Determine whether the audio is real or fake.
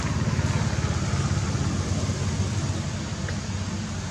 real